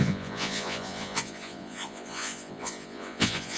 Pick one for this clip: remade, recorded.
remade